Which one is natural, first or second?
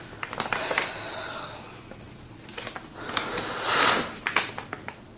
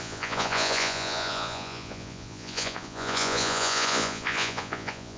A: first